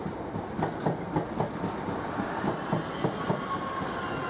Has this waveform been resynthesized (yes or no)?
no